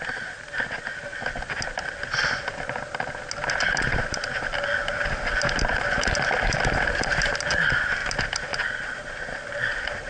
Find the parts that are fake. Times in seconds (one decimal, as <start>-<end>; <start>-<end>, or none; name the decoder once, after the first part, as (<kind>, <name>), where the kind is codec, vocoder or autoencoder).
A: none

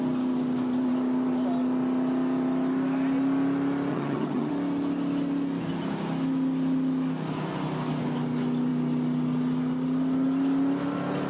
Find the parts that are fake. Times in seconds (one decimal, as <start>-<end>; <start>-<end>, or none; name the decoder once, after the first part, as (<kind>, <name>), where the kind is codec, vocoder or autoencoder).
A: 3.9-4.5 (vocoder, HiFi-GAN)

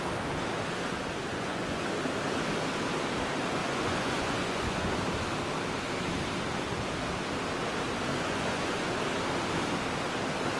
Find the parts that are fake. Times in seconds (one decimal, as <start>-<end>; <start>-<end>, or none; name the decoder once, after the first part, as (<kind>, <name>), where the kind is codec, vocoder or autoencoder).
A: 1.3-1.8 (vocoder, Vocos); 3.6-5.0; 8.1-8.9

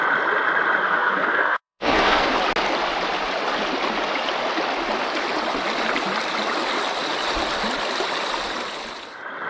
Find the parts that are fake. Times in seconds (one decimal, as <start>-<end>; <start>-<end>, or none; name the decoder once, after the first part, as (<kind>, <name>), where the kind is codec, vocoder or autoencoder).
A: 0.8-2.3 (codec, SNAC)

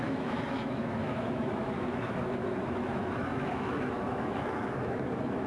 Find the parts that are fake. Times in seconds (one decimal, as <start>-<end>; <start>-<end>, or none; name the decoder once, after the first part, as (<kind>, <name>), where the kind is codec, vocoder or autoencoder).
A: 0.0-5.5 (autoencoder, DAC-VAE)